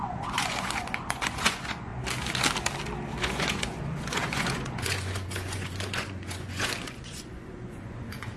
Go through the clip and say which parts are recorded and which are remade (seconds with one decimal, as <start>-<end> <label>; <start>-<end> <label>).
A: 0.0-1.9 remade; 1.9-3.2 recorded; 3.2-8.4 remade